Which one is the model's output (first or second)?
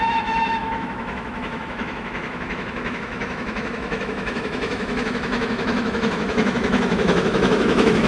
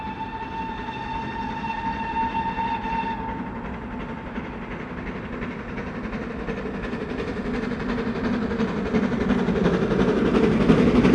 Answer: first